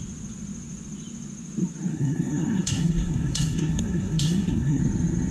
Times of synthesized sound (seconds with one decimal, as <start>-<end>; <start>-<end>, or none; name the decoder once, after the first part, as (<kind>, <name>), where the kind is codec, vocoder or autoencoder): 1.9-4.8 (codec, SNAC)